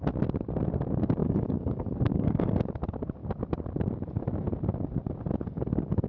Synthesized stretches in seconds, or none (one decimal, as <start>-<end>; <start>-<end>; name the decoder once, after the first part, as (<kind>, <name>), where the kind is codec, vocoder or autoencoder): 1.2-2.7 (codec, DAC)